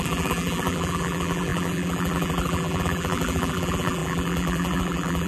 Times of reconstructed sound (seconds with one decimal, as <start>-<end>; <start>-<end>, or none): 0.0-5.3